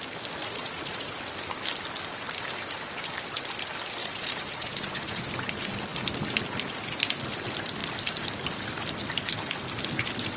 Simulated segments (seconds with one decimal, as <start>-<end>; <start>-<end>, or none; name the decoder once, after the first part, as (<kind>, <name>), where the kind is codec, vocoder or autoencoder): 0.4-1.2 (vocoder, Vocos); 4.0-5.2